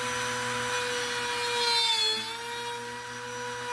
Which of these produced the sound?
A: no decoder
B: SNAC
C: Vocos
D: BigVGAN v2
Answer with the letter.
A